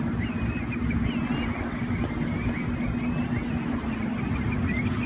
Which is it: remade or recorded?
recorded